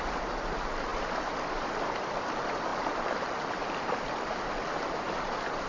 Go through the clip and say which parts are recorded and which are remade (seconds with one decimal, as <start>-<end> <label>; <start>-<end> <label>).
0.0-5.7 recorded